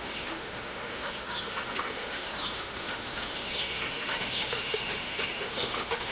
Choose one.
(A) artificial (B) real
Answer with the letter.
A